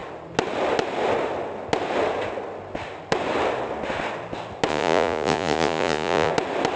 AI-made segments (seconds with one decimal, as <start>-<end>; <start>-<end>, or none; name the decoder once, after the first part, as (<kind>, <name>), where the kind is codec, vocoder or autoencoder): 4.7-6.3 (vocoder, Vocos)